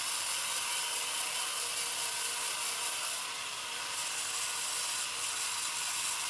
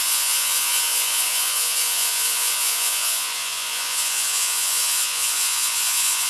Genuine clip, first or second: first